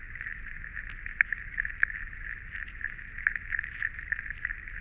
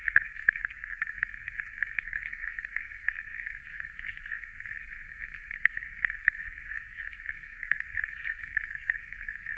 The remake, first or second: second